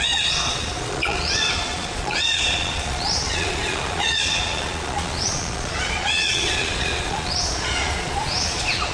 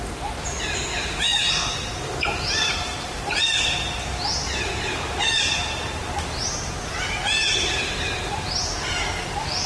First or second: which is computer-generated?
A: first